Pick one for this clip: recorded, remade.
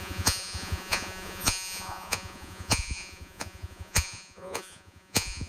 remade